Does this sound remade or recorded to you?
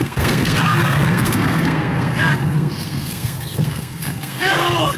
remade